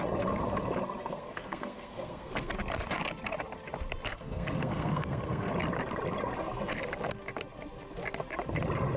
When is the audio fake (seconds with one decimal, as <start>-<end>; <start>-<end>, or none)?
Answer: 1.1-2.5; 4.1-5.5